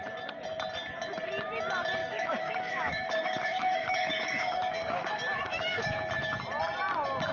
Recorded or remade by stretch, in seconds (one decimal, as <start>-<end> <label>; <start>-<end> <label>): 0.0-2.0 recorded; 2.0-6.1 remade; 6.1-7.3 recorded